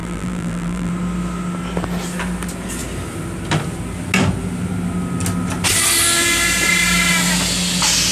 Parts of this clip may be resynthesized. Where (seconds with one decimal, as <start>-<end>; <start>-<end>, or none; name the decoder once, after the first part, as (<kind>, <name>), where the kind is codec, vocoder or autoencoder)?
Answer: 0.0-0.9 (vocoder, BigVGAN v2)